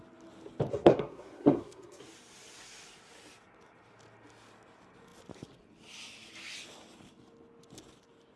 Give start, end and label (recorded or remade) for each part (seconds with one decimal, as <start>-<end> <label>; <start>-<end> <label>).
0.0-0.7 recorded; 0.7-2.0 remade; 2.0-8.4 recorded